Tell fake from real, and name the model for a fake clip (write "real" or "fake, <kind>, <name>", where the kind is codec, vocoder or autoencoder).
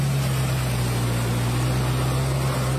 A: real